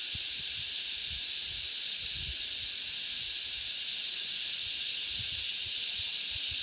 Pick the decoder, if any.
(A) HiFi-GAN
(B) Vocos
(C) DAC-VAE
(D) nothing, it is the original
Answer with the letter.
D